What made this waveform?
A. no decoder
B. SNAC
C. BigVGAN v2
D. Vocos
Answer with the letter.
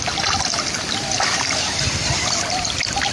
C